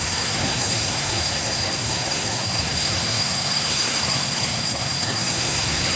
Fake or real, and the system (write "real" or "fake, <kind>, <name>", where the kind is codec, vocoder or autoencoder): fake, codec, SNAC